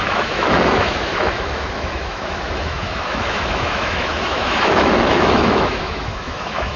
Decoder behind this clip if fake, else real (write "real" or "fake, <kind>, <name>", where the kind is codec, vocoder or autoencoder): fake, autoencoder, DAC-VAE